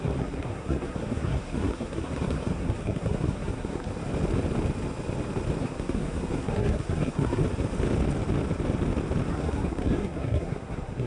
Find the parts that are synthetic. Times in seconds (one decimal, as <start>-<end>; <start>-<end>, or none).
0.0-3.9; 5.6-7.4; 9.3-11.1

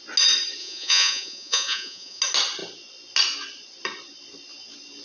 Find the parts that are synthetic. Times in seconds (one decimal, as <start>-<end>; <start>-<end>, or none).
0.6-2.2

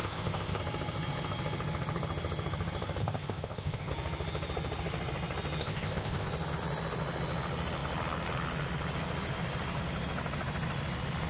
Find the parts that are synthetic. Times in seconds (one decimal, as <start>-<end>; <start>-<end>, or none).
0.0-0.6; 3.0-3.9; 5.6-6.3